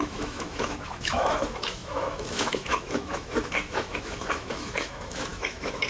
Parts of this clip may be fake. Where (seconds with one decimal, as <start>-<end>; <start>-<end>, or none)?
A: 0.0-5.9